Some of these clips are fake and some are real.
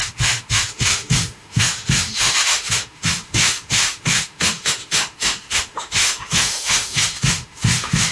fake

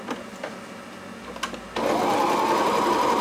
real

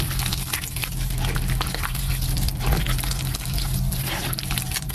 real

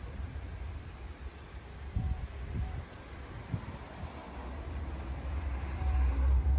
fake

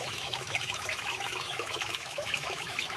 fake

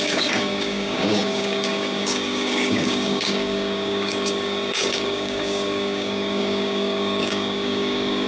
fake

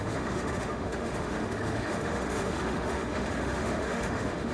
fake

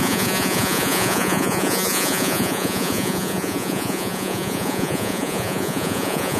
fake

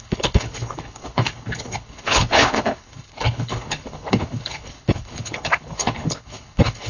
fake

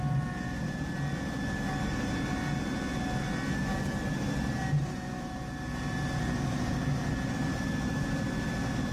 real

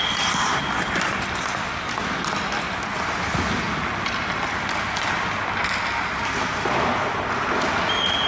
real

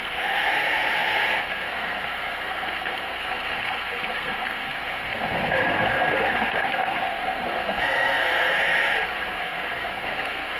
fake